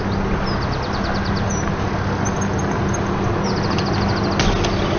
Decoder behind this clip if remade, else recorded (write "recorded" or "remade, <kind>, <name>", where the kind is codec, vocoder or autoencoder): recorded